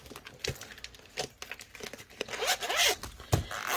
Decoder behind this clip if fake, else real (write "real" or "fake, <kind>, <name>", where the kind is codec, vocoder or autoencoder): real